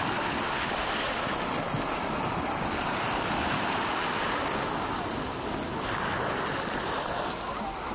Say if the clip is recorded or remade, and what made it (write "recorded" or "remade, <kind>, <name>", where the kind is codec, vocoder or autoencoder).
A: recorded